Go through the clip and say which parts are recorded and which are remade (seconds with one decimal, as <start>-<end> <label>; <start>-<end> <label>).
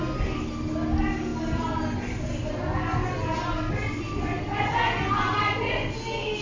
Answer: 0.0-6.4 recorded